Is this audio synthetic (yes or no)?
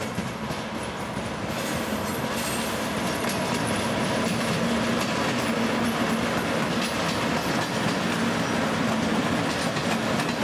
no